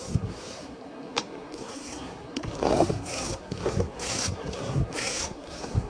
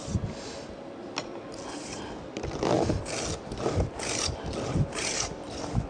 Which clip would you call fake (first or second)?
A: first